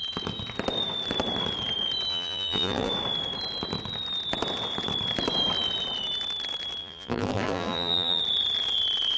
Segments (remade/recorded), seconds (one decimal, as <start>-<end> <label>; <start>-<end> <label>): 0.0-2.1 recorded; 2.1-2.9 remade; 2.9-6.8 recorded; 6.8-8.2 remade; 8.2-9.2 recorded

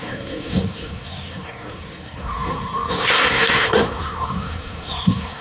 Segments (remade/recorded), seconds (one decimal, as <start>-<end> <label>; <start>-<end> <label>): 0.0-5.4 remade

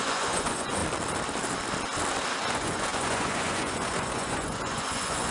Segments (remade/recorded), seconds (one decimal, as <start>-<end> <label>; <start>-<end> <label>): 0.0-0.8 remade; 0.8-2.4 recorded; 2.4-5.3 remade

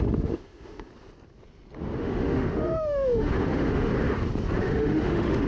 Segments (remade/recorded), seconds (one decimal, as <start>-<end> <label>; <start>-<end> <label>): 0.0-0.9 remade; 0.9-2.0 recorded; 2.0-3.9 remade; 3.9-4.6 recorded; 4.6-5.5 remade

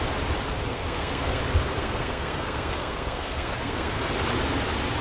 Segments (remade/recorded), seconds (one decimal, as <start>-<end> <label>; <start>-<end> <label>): 0.0-0.7 recorded; 0.7-1.4 remade; 1.4-1.8 recorded; 1.8-4.1 remade; 4.1-5.0 recorded

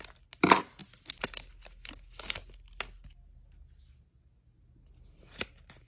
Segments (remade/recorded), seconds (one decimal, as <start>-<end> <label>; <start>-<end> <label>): 0.0-5.9 recorded